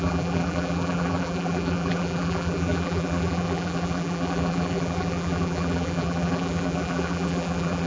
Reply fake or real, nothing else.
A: fake